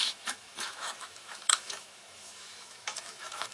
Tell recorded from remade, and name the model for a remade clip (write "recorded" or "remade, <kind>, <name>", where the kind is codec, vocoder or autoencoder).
remade, autoencoder, DAC-VAE